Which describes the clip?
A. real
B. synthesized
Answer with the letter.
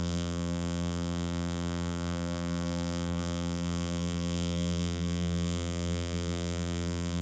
B